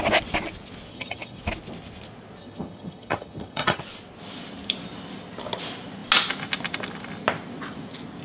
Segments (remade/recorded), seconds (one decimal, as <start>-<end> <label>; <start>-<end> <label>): 0.0-0.9 recorded; 0.9-1.4 remade; 1.4-2.4 recorded; 2.4-3.8 remade; 3.8-8.2 recorded